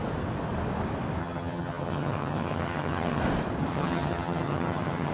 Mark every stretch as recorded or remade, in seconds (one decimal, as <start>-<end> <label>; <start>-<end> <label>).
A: 0.0-1.2 recorded; 1.2-3.2 remade; 3.2-3.7 recorded; 3.7-5.1 remade